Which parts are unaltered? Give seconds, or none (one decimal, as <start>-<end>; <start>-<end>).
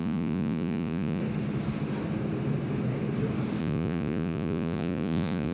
1.2-3.6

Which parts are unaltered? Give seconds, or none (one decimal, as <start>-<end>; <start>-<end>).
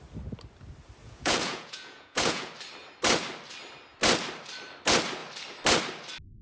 0.0-1.0; 2.5-6.4